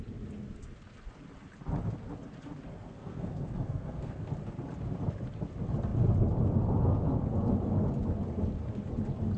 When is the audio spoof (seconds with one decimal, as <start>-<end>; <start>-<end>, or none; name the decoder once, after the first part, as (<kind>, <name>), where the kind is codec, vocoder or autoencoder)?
2.7-4.3 (codec, SNAC)